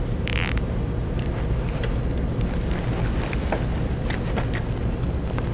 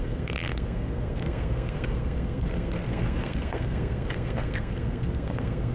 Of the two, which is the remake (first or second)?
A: second